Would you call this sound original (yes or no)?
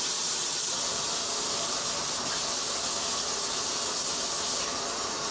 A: yes